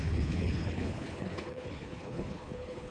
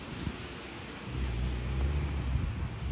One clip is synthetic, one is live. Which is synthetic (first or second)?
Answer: first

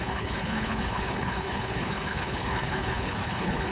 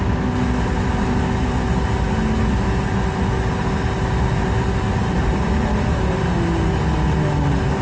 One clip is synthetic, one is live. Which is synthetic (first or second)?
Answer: first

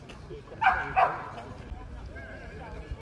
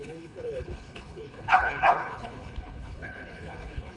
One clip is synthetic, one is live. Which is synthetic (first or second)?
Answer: second